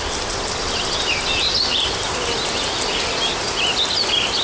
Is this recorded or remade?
recorded